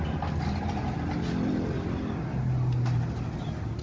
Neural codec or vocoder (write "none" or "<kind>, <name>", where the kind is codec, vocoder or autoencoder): none